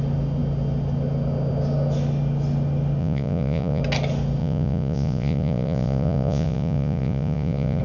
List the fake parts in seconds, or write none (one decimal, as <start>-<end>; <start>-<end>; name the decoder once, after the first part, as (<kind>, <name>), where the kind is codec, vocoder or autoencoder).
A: 3.0-3.8 (vocoder, Vocos); 4.4-7.8